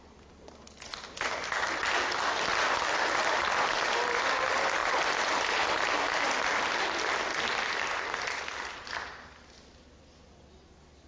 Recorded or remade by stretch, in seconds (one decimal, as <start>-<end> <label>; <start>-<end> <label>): 0.0-11.1 recorded